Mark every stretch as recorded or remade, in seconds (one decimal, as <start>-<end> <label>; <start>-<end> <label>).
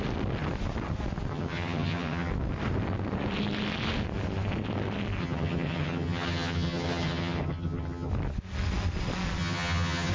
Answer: 0.0-1.3 recorded; 1.3-2.3 remade; 2.3-5.2 recorded; 5.2-8.1 remade; 8.1-9.4 recorded; 9.4-10.1 remade